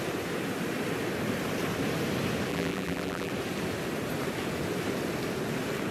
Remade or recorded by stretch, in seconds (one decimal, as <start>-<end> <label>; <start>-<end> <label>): 0.0-2.5 recorded; 2.5-3.3 remade; 3.3-5.9 recorded